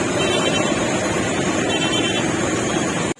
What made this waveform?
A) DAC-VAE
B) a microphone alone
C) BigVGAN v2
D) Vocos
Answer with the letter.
C